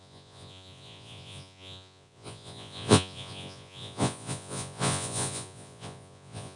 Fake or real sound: fake